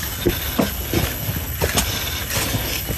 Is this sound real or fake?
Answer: real